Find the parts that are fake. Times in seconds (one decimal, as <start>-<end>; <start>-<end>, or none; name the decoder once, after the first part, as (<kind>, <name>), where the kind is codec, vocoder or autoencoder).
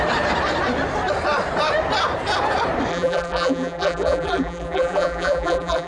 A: 2.9-5.9 (vocoder, BigVGAN v2)